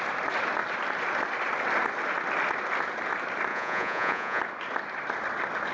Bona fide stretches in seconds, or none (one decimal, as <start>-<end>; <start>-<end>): 0.0-3.5; 4.4-5.7